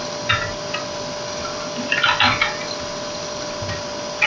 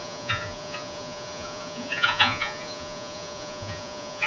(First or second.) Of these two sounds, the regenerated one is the second